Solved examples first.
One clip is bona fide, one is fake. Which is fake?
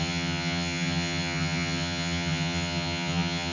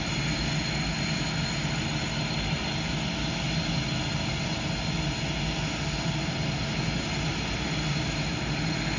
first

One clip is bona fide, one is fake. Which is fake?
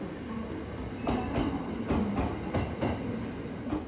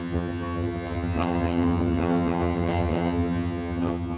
second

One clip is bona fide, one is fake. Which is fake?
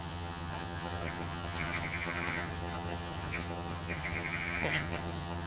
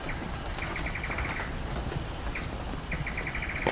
first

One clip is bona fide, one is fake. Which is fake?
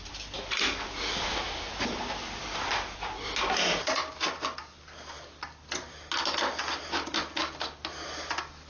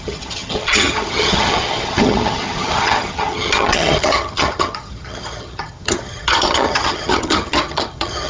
second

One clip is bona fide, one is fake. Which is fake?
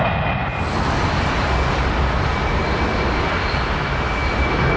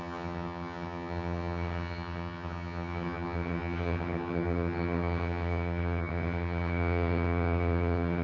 second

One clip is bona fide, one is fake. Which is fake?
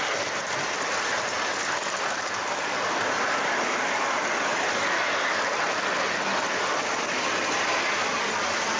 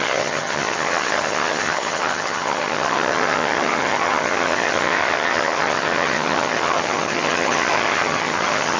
second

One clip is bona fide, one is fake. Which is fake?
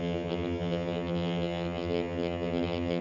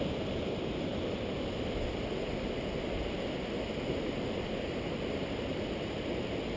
first